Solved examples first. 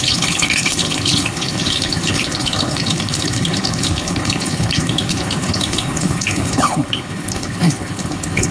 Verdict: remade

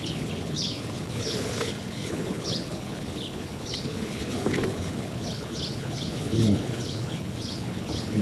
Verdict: remade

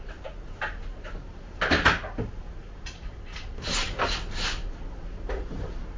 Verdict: recorded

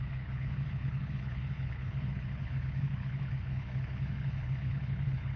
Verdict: remade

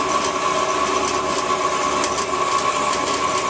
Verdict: recorded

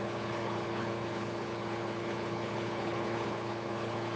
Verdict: remade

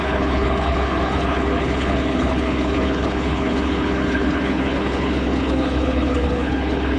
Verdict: remade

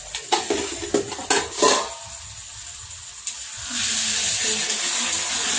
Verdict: recorded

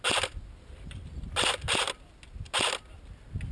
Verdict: recorded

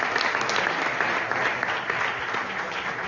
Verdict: recorded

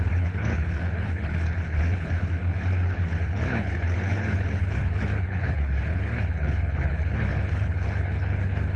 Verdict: remade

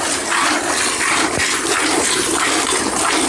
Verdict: recorded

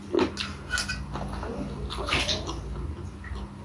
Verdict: recorded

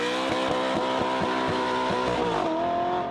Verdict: recorded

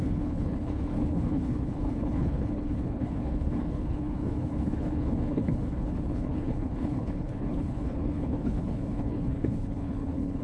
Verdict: remade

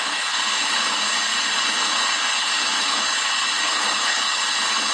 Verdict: remade